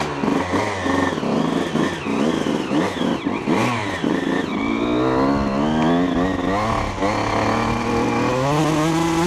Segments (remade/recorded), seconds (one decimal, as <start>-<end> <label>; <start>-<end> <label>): 0.0-3.8 recorded; 3.8-4.8 remade; 4.8-9.3 recorded